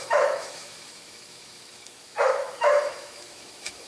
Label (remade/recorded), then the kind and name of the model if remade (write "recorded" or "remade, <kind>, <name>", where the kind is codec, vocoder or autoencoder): remade, autoencoder, DAC-VAE